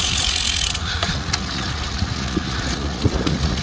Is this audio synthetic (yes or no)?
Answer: yes